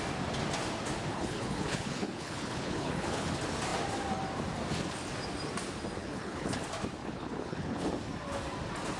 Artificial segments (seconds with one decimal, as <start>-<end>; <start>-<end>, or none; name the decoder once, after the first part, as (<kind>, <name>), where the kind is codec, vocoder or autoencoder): 1.1-3.3 (codec, HILCodec); 6.0-6.6; 7.0-7.9